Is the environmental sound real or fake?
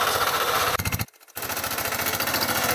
real